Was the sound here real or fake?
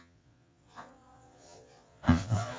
fake